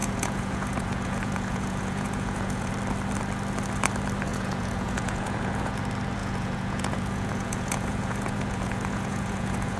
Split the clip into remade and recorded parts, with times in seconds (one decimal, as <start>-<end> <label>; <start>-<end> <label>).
0.0-2.7 remade; 2.7-4.3 recorded; 4.3-5.8 remade; 5.8-6.2 recorded; 6.2-9.8 remade